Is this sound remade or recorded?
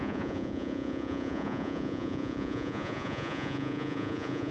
remade